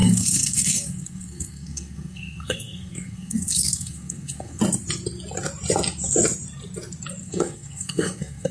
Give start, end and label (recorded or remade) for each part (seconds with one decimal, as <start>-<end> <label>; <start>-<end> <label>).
0.0-4.6 remade; 4.6-7.2 recorded; 7.2-8.5 remade